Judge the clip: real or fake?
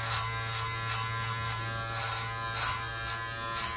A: real